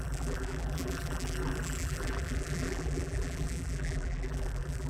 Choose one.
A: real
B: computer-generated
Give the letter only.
B